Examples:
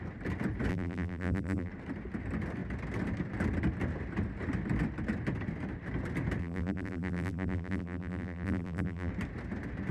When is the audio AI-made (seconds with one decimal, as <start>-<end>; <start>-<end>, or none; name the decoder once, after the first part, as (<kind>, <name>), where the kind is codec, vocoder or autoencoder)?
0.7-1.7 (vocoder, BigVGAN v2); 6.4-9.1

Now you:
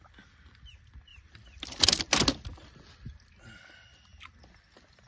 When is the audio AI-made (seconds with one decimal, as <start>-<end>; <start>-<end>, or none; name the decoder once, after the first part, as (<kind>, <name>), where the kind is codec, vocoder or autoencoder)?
1.1-2.0 (vocoder, BigVGAN v2); 4.1-5.1

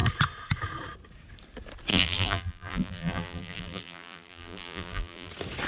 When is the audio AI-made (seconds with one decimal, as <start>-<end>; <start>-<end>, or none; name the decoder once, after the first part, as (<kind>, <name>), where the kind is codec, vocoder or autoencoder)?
1.9-5.3 (vocoder, BigVGAN v2)